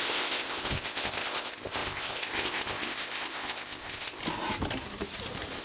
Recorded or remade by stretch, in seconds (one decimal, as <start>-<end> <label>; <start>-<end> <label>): 0.0-4.2 remade; 4.2-5.6 recorded